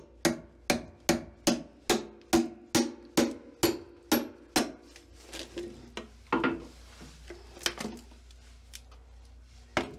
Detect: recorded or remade recorded